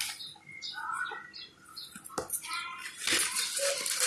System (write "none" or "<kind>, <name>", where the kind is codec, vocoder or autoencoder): none